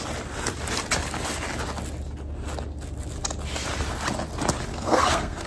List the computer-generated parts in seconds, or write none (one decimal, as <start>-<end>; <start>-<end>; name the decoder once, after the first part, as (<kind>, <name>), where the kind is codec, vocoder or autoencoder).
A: 4.7-5.5 (codec, SNAC)